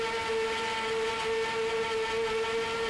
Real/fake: real